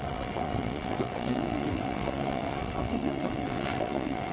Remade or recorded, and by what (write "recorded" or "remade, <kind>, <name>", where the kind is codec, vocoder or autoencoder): remade, vocoder, WaveNeXt